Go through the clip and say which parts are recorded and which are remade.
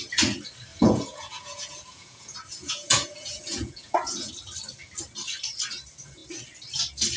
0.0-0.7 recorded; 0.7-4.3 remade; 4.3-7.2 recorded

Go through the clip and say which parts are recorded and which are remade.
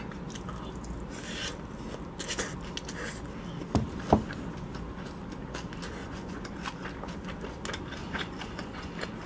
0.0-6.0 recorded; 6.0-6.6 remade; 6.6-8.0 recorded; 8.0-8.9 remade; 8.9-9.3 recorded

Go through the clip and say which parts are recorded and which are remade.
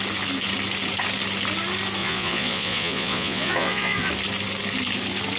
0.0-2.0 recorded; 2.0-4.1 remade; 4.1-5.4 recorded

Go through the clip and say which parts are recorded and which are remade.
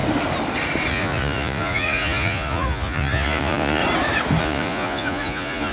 0.0-0.9 recorded; 0.9-3.8 remade; 3.8-4.4 recorded; 4.4-5.7 remade